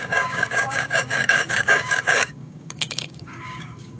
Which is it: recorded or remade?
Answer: remade